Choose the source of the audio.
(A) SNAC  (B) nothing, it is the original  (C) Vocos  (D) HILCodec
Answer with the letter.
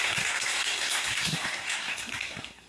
A